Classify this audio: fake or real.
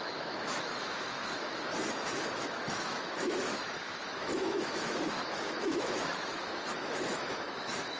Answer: fake